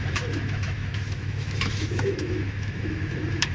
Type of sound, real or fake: fake